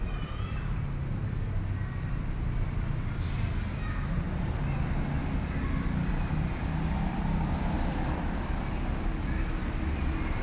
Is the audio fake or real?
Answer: real